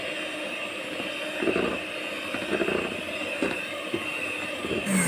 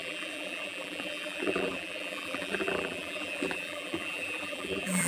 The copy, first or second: second